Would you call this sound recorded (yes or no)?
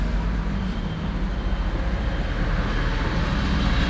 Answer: yes